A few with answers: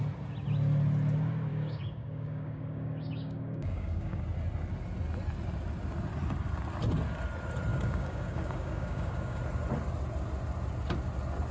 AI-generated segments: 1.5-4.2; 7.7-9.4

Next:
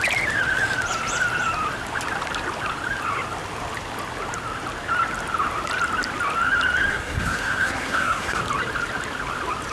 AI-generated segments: 6.9-8.4

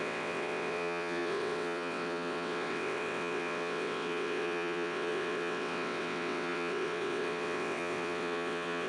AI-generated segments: 0.0-8.9

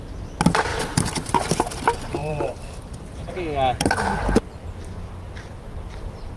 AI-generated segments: 0.7-1.6; 2.2-3.3

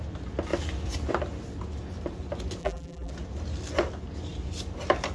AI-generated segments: 2.6-3.1

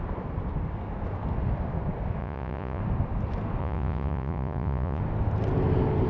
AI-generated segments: 2.2-2.8; 3.6-5.0